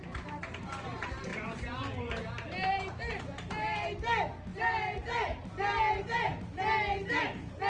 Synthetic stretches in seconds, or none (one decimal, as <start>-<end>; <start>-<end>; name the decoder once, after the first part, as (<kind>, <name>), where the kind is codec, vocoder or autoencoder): none